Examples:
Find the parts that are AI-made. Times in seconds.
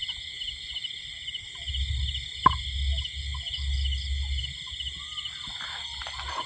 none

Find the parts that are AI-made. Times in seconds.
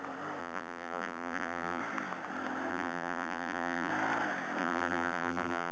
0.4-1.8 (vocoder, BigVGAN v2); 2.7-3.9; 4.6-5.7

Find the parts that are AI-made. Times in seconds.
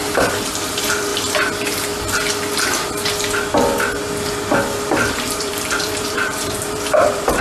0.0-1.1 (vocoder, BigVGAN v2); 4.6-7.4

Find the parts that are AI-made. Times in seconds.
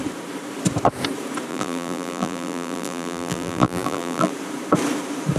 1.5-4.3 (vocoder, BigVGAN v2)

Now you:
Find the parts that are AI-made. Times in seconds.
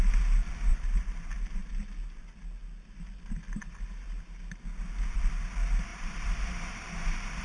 0.7-1.7 (vocoder, BigVGAN v2); 5.9-7.4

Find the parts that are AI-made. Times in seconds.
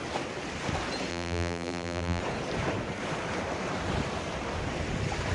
1.1-2.2 (vocoder, BigVGAN v2)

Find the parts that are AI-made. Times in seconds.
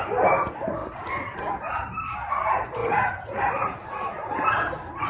0.8-2.3 (vocoder, BigVGAN v2)